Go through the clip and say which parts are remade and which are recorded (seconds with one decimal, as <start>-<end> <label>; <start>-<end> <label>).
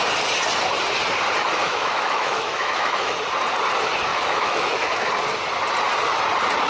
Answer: 0.0-1.6 recorded; 1.6-3.2 remade; 3.2-4.1 recorded; 4.1-5.1 remade; 5.1-6.7 recorded